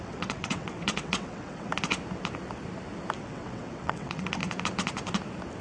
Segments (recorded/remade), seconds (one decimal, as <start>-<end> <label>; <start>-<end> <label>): 0.0-1.7 remade; 1.7-3.2 recorded; 3.2-4.4 remade; 4.4-5.6 recorded